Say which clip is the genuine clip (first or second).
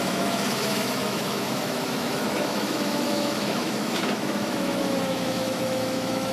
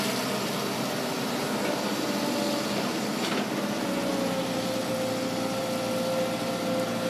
second